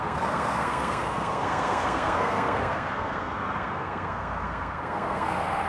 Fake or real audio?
fake